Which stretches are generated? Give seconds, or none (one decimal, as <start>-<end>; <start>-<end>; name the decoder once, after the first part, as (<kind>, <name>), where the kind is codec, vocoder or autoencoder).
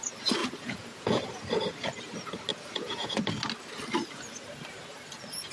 0.4-1.4 (vocoder, Vocos); 2.5-3.2